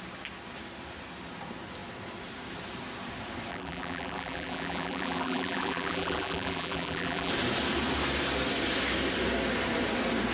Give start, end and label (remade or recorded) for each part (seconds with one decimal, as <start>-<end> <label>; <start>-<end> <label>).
0.0-3.5 recorded; 3.5-7.3 remade; 7.3-10.3 recorded